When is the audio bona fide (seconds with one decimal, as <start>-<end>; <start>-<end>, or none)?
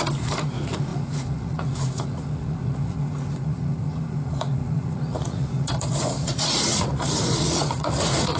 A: none